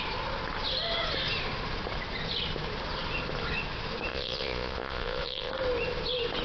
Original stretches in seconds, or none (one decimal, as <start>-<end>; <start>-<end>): 0.0-4.1; 5.5-6.4